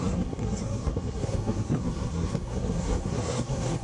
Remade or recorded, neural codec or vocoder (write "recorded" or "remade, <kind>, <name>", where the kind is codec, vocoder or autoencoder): remade, codec, SNAC